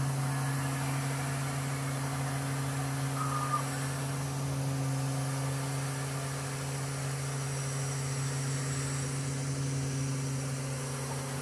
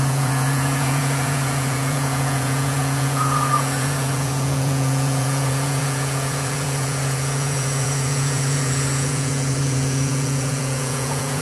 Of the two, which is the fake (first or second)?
second